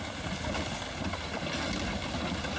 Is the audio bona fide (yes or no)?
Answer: yes